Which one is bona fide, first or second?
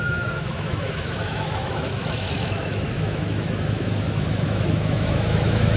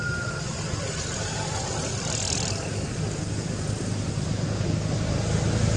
second